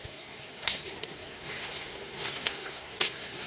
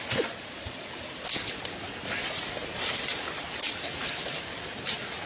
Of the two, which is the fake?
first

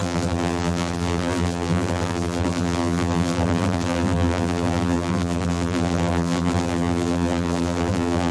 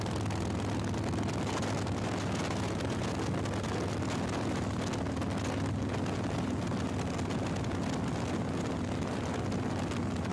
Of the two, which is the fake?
first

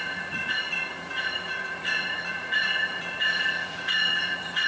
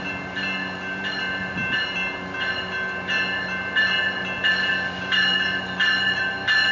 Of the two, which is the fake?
first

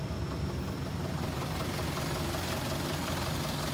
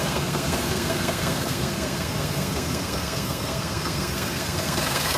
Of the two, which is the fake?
second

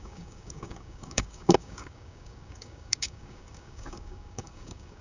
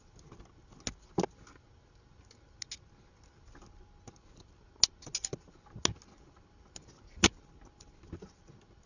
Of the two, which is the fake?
first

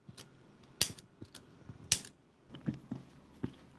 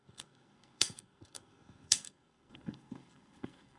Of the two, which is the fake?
second